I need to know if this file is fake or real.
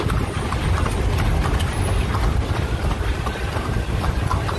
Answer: fake